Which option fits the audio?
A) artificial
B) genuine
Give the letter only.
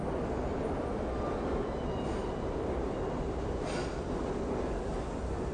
B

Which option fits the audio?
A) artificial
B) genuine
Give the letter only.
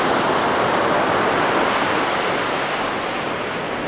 B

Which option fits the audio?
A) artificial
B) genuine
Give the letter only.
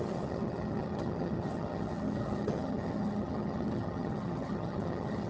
A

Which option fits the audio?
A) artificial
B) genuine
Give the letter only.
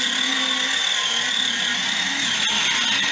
B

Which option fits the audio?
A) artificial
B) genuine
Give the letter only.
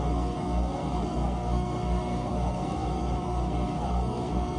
A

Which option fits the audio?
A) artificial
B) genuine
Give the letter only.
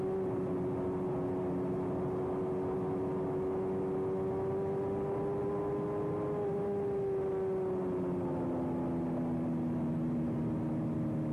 B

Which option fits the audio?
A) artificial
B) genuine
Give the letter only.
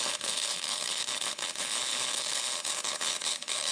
A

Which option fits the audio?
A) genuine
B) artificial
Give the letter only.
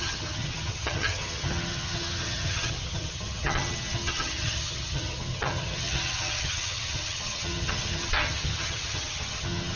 B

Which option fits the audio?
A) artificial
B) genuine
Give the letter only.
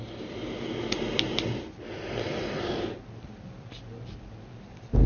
B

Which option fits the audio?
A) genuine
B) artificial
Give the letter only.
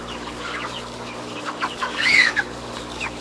B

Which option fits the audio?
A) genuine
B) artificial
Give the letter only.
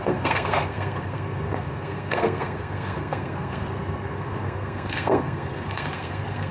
B